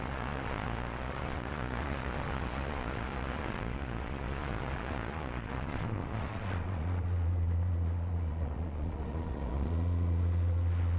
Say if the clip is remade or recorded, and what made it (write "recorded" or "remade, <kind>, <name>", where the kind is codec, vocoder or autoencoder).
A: remade, vocoder, Vocos